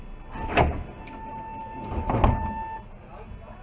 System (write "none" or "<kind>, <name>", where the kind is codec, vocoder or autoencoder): none